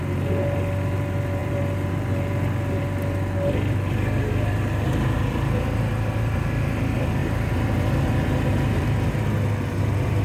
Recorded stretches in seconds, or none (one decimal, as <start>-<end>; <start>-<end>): 0.0-10.2